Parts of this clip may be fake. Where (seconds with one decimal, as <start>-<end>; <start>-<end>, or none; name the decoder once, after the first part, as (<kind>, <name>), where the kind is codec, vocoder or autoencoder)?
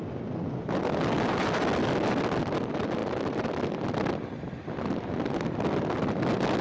none